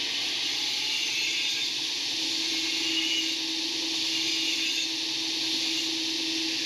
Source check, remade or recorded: recorded